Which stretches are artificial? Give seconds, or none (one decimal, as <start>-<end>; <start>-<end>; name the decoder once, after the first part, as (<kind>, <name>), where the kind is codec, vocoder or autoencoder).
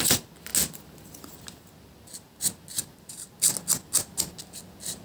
none